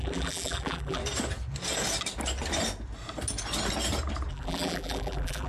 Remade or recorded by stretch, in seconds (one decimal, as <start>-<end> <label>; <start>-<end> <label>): 0.0-1.0 remade; 1.0-4.3 recorded; 4.3-5.5 remade